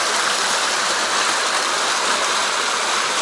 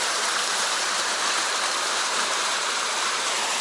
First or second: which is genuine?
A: first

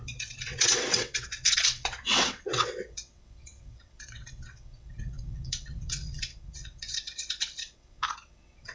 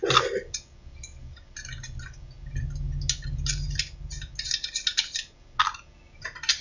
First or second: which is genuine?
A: second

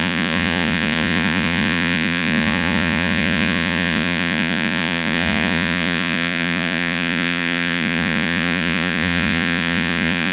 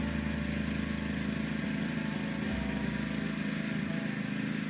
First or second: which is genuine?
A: second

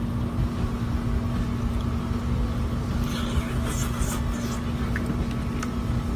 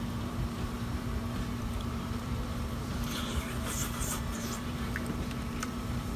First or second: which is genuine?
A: first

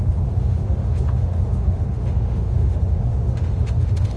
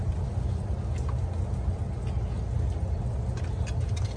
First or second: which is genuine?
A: second